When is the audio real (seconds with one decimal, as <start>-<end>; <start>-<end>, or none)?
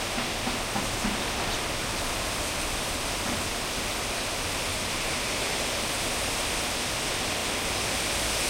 0.0-4.7; 5.7-8.5